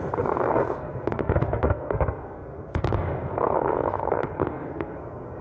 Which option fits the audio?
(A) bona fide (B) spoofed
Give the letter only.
B